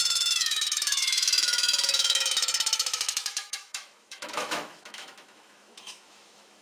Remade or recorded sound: remade